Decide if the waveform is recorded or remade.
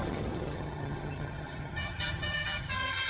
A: remade